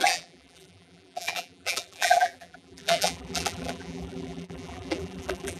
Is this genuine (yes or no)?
no